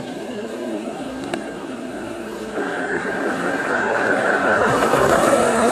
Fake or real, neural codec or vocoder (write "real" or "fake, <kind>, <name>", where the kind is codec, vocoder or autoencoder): fake, codec, SNAC